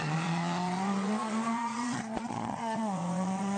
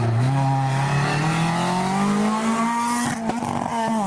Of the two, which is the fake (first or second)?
first